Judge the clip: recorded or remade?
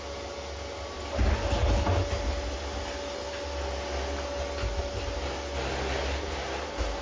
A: recorded